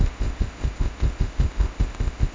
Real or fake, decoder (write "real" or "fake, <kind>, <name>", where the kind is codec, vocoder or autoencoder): fake, codec, ZipCodec